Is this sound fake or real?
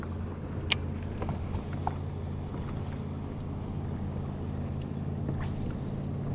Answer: real